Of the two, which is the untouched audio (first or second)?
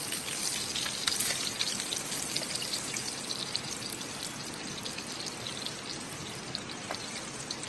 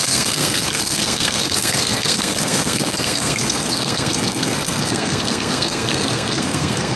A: first